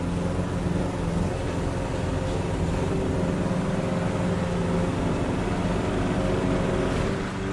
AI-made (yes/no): no